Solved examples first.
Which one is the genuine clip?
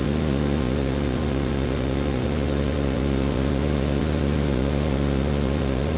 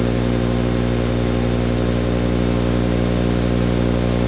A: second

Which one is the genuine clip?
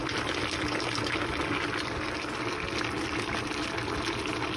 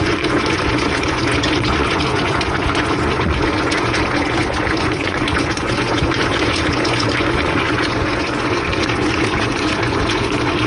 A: first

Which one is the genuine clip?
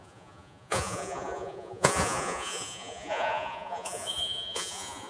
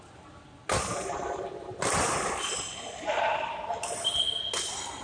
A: second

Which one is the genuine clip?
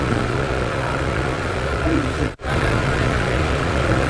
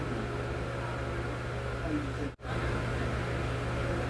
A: second